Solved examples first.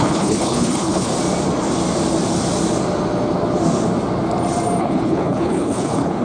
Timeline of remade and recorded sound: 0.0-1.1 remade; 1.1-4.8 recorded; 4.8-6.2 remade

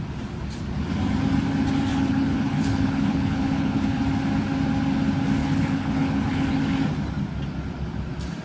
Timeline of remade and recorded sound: 0.0-1.9 recorded; 1.9-4.0 remade; 4.0-5.4 recorded; 5.4-6.6 remade; 6.6-8.4 recorded

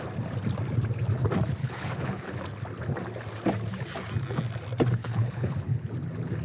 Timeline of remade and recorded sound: 0.0-1.6 recorded; 1.6-2.3 remade; 2.3-5.0 recorded; 5.0-5.9 remade; 5.9-6.4 recorded

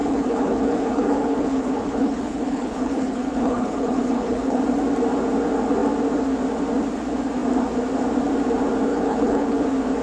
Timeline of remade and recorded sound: 0.0-4.6 remade; 4.6-8.9 recorded; 8.9-9.6 remade; 9.6-10.0 recorded